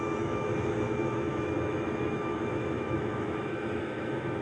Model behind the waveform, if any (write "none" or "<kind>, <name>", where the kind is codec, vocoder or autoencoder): autoencoder, DAC-VAE